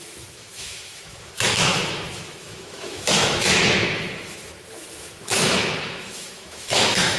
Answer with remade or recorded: remade